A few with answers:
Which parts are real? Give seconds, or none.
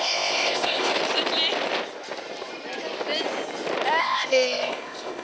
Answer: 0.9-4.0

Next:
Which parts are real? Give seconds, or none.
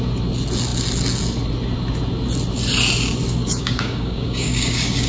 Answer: 0.0-3.4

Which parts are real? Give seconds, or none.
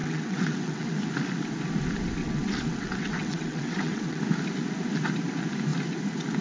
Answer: 0.9-2.2; 4.2-6.4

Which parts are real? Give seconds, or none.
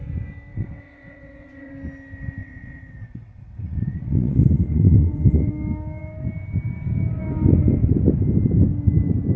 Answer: 0.0-0.5; 1.7-2.4; 5.5-9.4